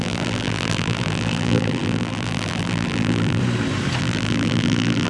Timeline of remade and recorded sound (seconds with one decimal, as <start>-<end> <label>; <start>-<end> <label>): 0.0-3.4 remade; 3.4-4.0 recorded; 4.0-5.1 remade